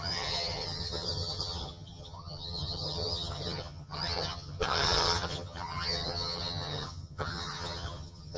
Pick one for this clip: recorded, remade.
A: remade